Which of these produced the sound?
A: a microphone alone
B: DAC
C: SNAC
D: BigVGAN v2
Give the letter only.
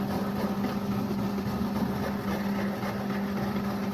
A